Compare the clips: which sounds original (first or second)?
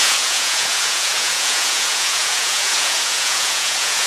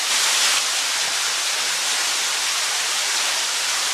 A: second